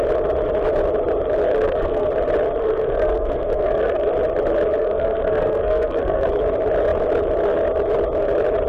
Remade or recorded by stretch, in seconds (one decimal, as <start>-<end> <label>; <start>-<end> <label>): 0.0-1.5 recorded; 1.5-2.1 remade; 2.1-2.6 recorded; 2.6-4.1 remade; 4.1-4.8 recorded; 4.8-6.3 remade; 6.3-8.7 recorded